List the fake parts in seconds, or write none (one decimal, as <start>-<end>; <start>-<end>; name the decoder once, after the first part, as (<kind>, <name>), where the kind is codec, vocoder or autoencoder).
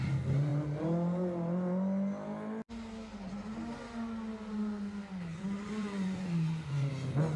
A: 5.3-6.9 (vocoder, Vocos)